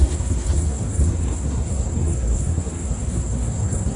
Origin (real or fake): fake